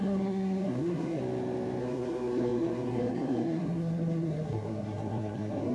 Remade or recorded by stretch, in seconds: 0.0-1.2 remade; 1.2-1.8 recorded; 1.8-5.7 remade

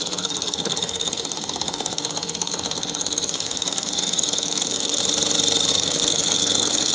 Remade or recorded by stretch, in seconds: 0.0-5.0 remade; 5.0-5.7 recorded; 5.7-6.9 remade

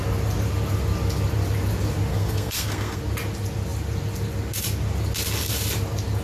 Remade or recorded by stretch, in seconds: 0.0-2.1 recorded; 2.1-3.0 remade; 3.0-6.2 recorded